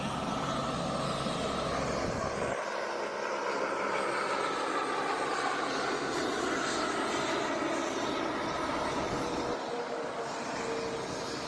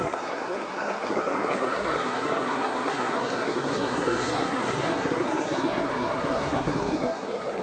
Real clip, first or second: first